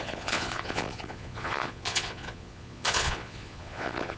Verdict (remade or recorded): remade